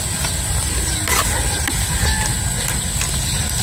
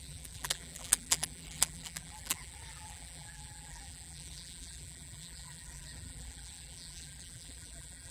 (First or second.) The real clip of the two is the first